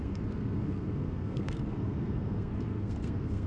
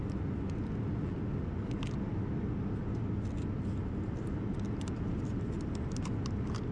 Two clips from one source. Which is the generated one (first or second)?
first